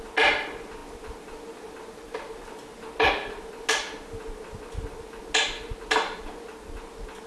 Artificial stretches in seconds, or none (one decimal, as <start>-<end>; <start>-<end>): none